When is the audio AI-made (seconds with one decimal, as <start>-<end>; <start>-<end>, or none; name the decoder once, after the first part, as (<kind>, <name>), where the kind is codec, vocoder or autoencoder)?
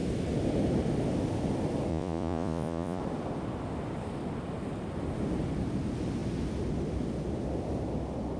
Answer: 1.9-3.0 (vocoder, Vocos)